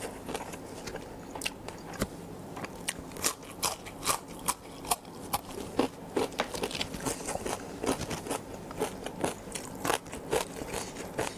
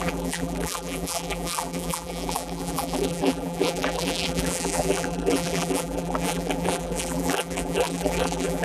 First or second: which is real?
first